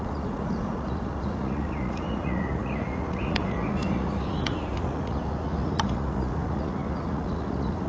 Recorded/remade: remade